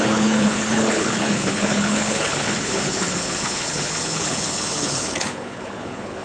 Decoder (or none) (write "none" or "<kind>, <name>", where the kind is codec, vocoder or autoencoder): codec, HILCodec